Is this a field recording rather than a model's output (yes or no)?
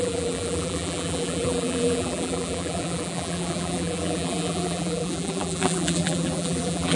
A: no